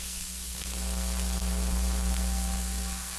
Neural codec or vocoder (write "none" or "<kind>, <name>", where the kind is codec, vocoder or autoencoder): codec, SNAC